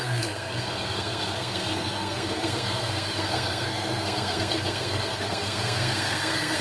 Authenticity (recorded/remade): remade